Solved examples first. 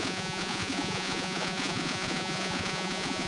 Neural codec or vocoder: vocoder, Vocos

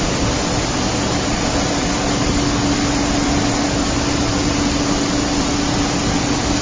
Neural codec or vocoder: none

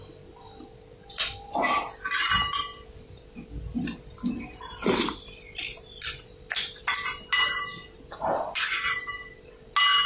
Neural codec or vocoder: none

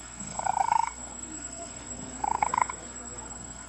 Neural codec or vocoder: codec, SNAC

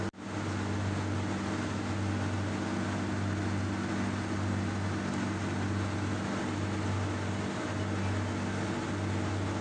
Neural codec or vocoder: none